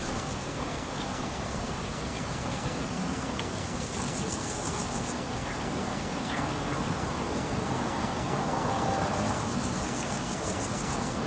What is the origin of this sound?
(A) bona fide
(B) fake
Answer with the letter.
B